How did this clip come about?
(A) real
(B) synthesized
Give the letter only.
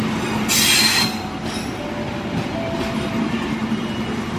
A